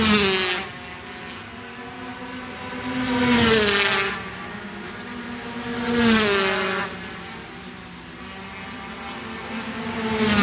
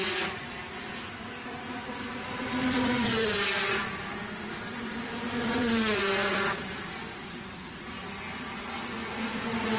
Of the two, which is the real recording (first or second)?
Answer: first